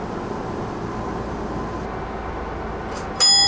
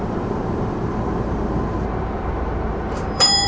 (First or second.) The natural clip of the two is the first